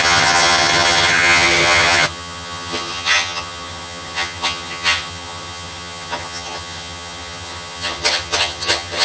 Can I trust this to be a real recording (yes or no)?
no